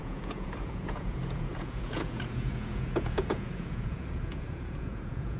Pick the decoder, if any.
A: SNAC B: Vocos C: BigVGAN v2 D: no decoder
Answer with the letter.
B